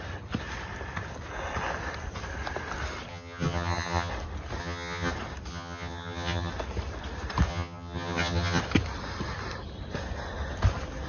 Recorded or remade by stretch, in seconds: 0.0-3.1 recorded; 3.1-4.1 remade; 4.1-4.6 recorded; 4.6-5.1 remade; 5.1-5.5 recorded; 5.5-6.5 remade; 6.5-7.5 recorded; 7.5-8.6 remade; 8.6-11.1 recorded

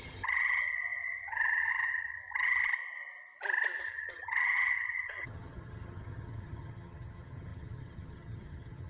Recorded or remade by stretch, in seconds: 0.0-2.7 remade; 2.7-3.8 recorded; 3.8-8.9 remade

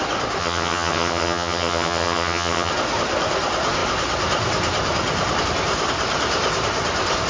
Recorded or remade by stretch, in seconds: 0.0-0.4 recorded; 0.4-2.7 remade; 2.7-7.3 recorded

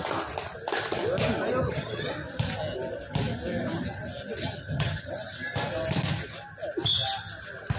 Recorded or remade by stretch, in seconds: 0.0-1.6 recorded; 1.6-2.1 remade; 2.1-4.4 recorded; 4.4-5.1 remade; 5.1-7.8 recorded

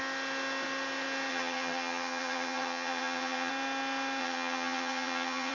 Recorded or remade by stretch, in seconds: 0.0-1.3 recorded; 1.3-3.5 remade; 3.5-4.2 recorded; 4.2-5.5 remade

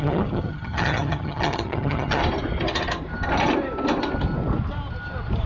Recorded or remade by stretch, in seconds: 0.0-2.2 remade; 2.2-5.5 recorded

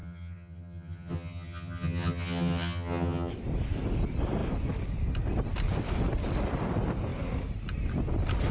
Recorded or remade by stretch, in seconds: 0.0-3.3 remade; 3.3-8.5 recorded